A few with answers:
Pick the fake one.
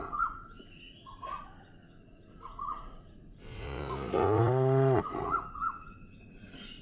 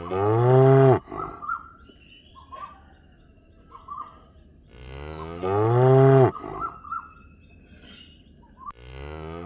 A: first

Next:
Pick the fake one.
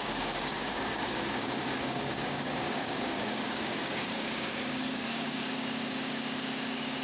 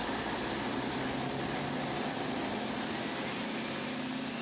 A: first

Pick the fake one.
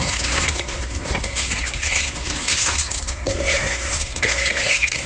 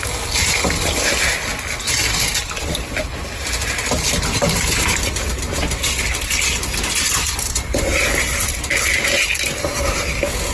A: first